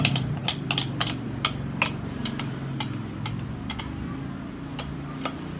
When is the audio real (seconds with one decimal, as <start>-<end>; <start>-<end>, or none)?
0.0-5.6